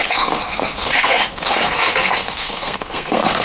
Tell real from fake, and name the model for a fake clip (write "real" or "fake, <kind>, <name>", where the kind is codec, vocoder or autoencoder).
fake, codec, SNAC